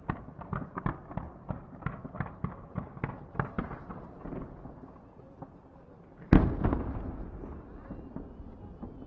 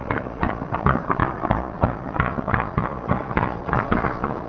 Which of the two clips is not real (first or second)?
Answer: second